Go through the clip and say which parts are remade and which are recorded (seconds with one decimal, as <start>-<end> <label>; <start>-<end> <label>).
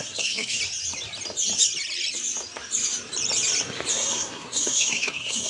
0.0-0.6 remade; 0.6-3.9 recorded; 3.9-5.5 remade